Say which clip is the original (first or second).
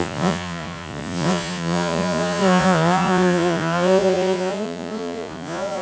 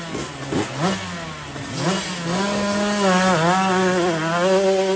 second